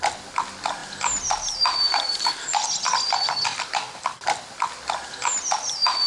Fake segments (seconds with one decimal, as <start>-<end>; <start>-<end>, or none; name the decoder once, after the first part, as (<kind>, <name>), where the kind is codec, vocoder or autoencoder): none